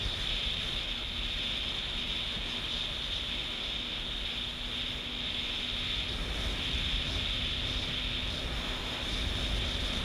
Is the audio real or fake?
real